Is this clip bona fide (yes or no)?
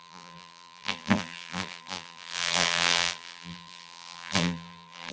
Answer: no